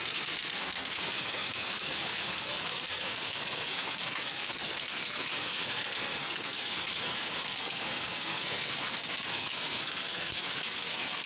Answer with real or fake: fake